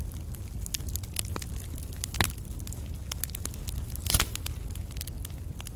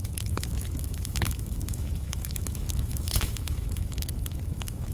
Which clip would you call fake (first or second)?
second